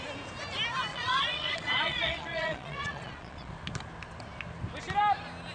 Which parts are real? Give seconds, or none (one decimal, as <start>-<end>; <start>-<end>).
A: 0.0-0.9; 3.5-5.5